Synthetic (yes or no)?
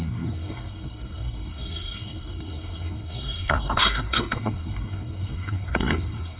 yes